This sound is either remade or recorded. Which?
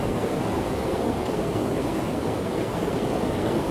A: remade